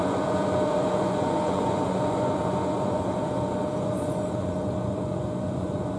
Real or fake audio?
fake